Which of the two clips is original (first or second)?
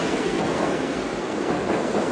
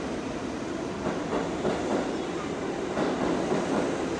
second